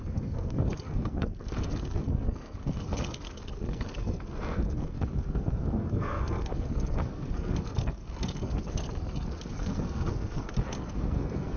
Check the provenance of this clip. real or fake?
fake